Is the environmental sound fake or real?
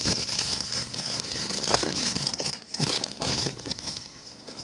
fake